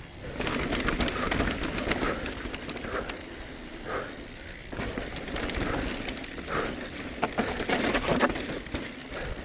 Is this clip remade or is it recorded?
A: recorded